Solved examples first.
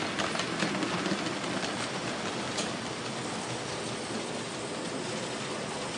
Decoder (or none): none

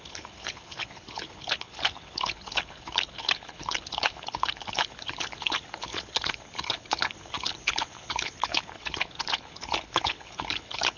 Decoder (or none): codec, HILCodec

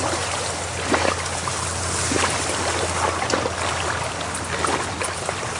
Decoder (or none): none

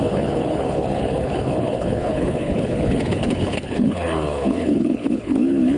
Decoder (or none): codec, HILCodec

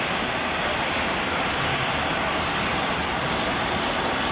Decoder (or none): none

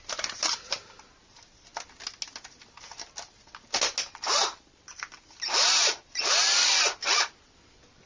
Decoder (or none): none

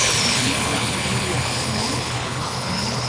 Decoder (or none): codec, HILCodec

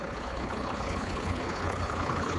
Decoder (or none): codec, HILCodec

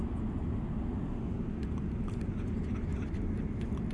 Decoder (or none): none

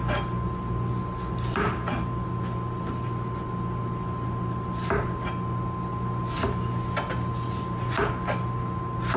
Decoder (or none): none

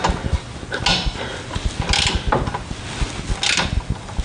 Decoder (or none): none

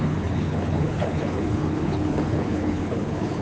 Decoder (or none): codec, HILCodec